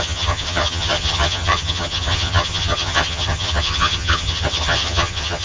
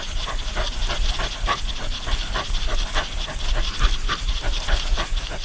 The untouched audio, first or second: second